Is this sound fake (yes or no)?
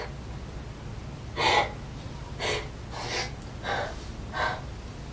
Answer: no